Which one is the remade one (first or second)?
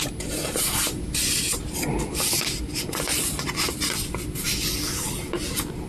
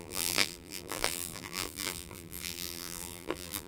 second